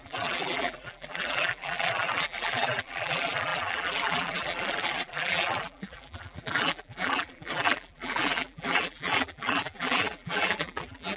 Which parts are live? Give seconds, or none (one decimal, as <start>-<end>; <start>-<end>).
none